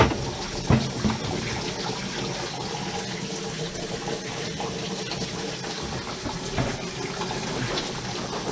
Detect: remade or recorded recorded